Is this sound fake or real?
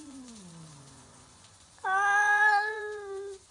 fake